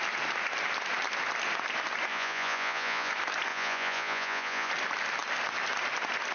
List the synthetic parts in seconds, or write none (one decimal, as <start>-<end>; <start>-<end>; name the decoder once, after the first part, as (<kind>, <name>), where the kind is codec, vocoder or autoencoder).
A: 2.1-3.1 (vocoder, Vocos); 3.5-4.7